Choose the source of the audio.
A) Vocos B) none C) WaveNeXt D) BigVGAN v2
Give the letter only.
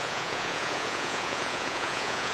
A